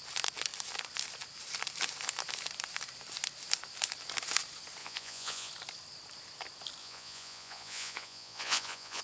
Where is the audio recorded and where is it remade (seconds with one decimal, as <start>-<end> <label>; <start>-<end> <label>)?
0.0-4.8 recorded; 4.8-5.5 remade; 5.5-6.8 recorded; 6.8-9.0 remade